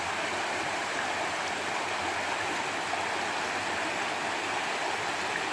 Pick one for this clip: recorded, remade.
recorded